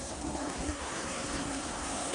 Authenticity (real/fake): fake